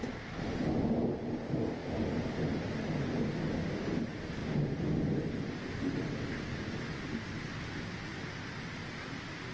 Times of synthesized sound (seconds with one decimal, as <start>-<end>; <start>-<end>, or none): none